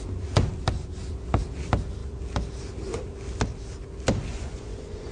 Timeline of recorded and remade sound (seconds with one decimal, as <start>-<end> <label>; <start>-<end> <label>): 0.0-4.3 recorded; 4.3-5.1 remade